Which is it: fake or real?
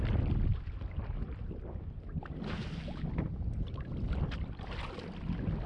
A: real